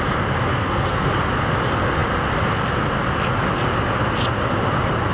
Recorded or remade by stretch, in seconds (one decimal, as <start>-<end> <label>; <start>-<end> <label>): 0.0-0.5 recorded; 0.5-1.1 remade; 1.1-5.1 recorded